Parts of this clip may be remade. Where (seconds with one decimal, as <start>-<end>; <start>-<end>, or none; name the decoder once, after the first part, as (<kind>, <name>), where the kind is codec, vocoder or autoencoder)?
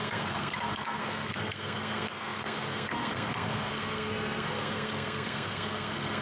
0.0-6.2 (codec, SNAC)